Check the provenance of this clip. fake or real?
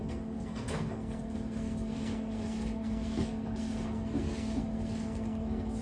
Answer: fake